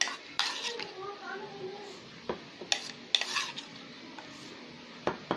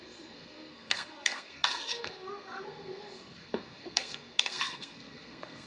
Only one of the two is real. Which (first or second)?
first